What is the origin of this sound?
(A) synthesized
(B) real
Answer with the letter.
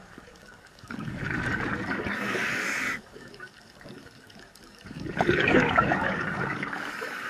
A